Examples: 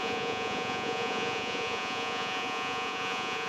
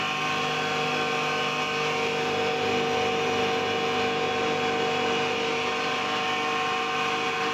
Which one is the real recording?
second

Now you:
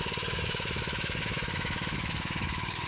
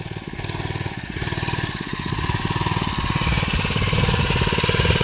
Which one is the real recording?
second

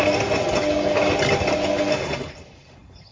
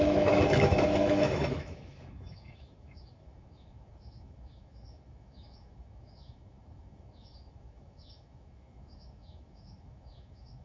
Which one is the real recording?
first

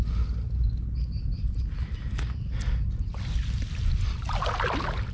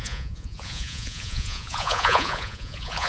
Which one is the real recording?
first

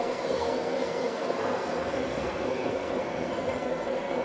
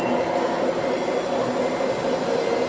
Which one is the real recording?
second